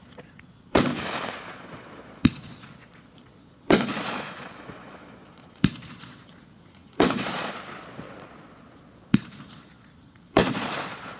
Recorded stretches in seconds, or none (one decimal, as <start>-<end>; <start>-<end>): 0.9-1.5